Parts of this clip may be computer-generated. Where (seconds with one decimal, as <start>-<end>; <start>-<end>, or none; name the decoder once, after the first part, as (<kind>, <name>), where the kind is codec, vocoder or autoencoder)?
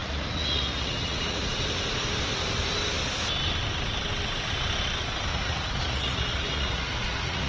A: 0.0-1.5 (vocoder, Vocos); 5.3-7.5